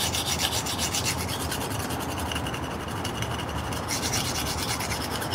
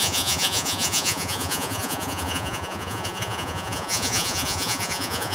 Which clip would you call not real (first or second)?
second